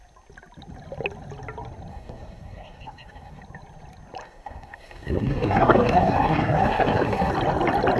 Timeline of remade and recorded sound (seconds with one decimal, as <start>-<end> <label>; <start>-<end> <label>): 0.0-1.9 recorded; 1.9-3.4 remade; 3.4-4.2 recorded; 4.2-7.3 remade; 7.3-8.0 recorded